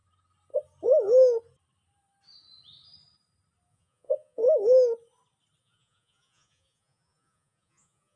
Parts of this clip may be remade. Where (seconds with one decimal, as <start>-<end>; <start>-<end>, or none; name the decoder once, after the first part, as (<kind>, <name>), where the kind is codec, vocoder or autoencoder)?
3.7-4.4 (vocoder, Vocos); 5.6-8.2